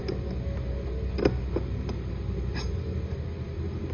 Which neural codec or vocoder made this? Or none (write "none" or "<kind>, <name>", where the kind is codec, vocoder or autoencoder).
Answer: none